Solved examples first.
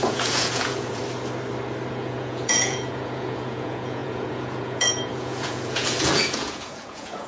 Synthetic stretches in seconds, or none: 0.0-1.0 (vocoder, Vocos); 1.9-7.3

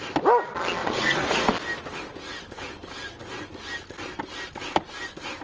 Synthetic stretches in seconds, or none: 0.8-1.5 (vocoder, Vocos)

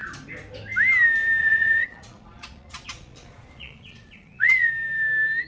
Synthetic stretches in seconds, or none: 1.4-4.7 (vocoder, Vocos)

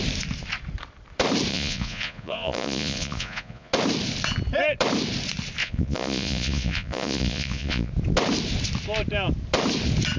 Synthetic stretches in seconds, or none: 1.5-3.7 (vocoder, Vocos); 5.6-7.9

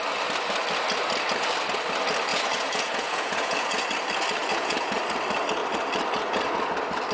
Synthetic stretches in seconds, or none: 2.3-3.8 (vocoder, Vocos); 4.4-5.0

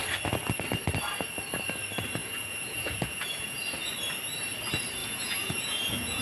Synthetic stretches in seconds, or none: 2.2-3.7 (vocoder, Vocos); 5.0-6.2